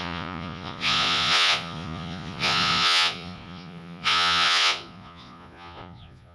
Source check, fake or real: fake